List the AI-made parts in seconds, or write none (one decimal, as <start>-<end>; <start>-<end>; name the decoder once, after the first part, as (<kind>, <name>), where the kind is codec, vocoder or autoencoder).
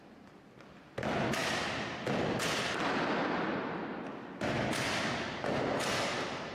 none